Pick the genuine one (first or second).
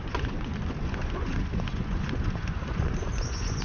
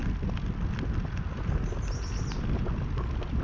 second